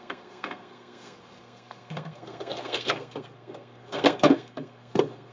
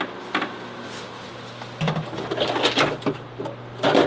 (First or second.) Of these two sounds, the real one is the second